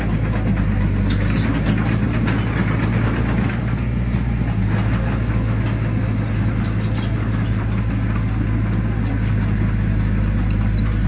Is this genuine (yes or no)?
yes